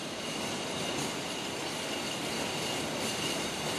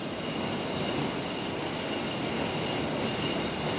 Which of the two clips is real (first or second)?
second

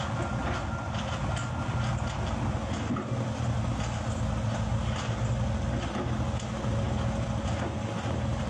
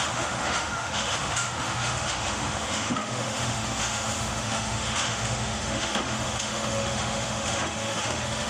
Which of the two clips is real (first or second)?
first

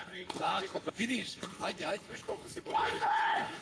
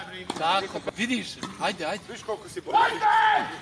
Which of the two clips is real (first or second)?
second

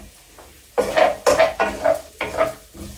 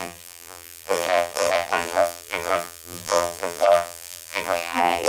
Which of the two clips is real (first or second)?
first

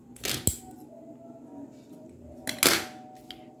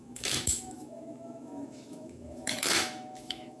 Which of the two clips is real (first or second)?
first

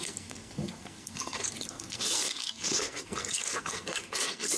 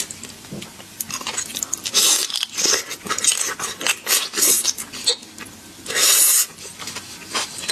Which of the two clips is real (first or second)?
second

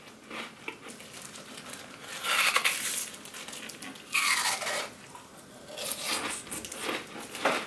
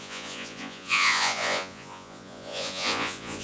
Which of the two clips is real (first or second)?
first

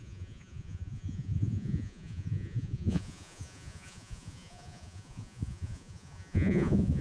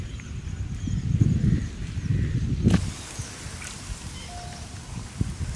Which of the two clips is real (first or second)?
second